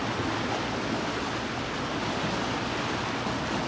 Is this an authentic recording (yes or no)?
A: yes